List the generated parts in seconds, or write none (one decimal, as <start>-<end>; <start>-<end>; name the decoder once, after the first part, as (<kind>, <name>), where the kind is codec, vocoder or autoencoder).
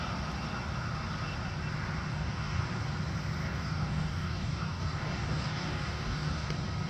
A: 2.1-2.6 (codec, DAC); 3.4-6.5